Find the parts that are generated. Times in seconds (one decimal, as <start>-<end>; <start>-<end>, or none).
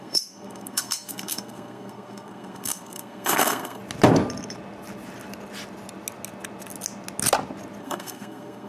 0.0-3.8; 7.8-8.7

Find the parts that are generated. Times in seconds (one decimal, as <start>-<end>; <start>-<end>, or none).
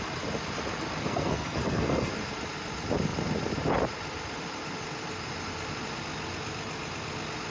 1.0-2.1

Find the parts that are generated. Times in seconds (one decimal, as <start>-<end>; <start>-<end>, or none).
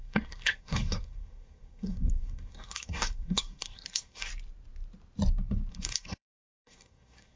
0.0-4.3; 5.7-7.4